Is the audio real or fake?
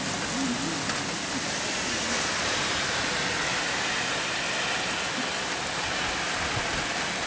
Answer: real